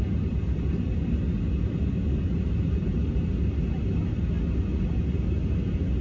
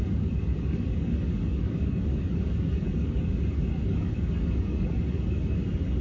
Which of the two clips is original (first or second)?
first